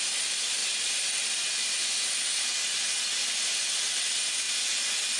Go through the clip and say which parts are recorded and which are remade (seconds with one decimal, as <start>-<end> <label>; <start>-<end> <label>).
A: 0.0-5.2 recorded